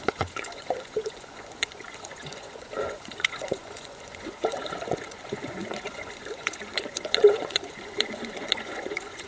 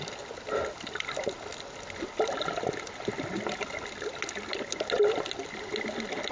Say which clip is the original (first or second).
second